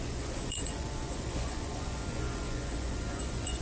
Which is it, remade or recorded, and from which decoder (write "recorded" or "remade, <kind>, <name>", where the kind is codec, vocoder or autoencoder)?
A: remade, vocoder, Vocos